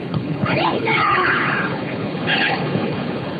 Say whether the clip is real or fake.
fake